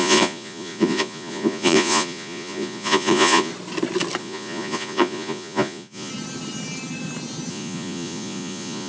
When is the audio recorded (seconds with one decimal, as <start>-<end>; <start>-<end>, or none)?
3.5-4.2; 6.1-7.5